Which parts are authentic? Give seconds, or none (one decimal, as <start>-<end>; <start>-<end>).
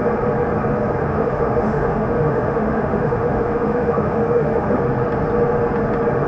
0.0-1.0; 4.8-6.3